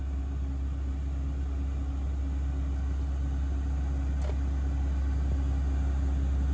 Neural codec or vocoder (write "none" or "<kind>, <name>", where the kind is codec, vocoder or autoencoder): none